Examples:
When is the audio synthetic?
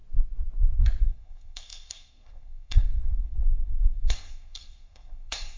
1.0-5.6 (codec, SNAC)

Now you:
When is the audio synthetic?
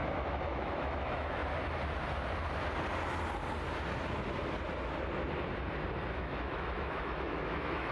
0.0-1.4 (autoencoder, DAC-VAE); 6.1-7.9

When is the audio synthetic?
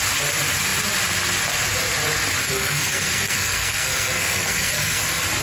2.4-5.0 (codec, SNAC)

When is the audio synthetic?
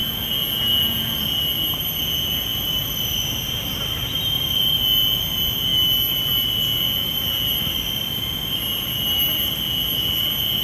none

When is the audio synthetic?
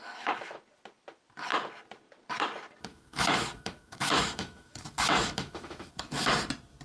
0.0-0.6 (autoencoder, DAC-VAE); 2.9-6.3